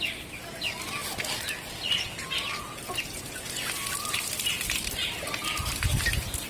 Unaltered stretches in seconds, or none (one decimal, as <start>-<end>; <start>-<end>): 0.0-6.5